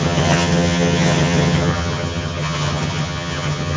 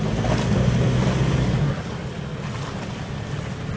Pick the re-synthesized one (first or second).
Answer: first